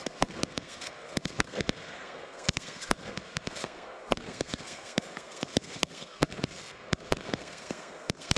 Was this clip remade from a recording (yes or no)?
yes